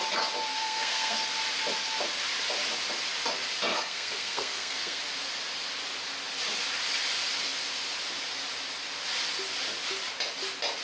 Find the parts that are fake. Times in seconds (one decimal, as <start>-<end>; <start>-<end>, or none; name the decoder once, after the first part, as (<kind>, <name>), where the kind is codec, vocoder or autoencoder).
0.5-1.3 (codec, SNAC); 3.7-5.0